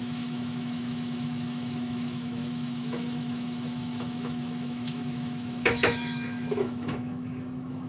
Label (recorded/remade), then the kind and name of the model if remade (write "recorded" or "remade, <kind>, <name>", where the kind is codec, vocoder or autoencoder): remade, autoencoder, DAC-VAE